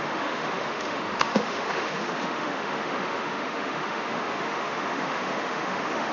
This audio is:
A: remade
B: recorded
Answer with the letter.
A